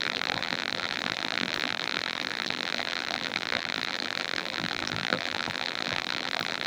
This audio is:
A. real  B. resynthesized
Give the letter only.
B